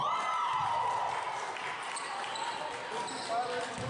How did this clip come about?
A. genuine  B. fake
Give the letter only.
A